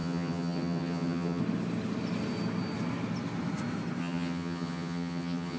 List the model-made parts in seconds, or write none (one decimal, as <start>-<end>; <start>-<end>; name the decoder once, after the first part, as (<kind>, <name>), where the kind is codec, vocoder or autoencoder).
0.0-1.4 (vocoder, HiFi-GAN); 4.0-5.6